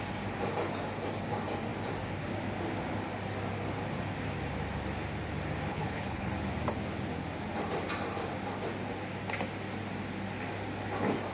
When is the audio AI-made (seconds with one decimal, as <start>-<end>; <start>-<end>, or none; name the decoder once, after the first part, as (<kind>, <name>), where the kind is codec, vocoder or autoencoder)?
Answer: 5.7-6.3 (codec, HILCodec)